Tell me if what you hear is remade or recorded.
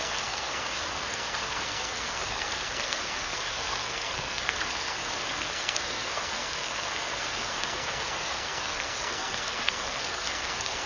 remade